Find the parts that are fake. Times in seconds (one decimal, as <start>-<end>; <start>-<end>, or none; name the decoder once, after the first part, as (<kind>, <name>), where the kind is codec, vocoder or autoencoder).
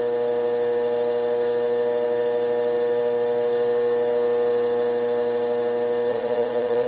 6.1-6.9 (vocoder, Vocos)